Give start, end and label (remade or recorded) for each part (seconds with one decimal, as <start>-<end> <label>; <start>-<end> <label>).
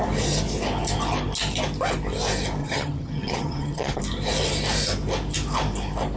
0.0-2.6 recorded; 2.6-4.0 remade; 4.0-6.2 recorded